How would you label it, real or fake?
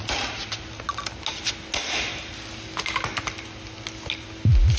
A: real